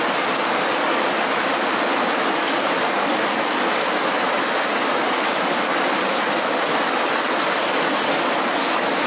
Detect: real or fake real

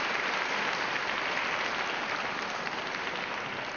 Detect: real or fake real